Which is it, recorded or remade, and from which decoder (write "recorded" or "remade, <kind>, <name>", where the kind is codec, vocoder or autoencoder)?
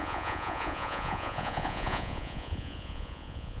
remade, vocoder, Vocos